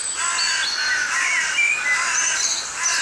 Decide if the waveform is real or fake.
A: real